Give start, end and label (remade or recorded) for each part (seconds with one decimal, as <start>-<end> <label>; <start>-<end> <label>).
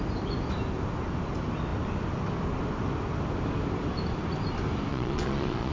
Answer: 0.0-4.9 recorded; 4.9-5.7 remade